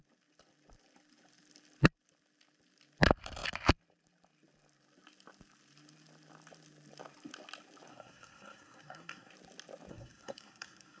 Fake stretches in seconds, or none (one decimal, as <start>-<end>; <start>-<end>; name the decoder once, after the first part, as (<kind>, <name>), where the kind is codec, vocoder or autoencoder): 7.9-9.3 (codec, SNAC); 9.9-11.0